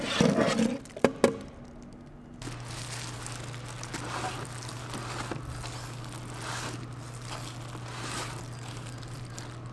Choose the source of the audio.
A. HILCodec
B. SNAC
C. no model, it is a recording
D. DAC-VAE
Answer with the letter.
C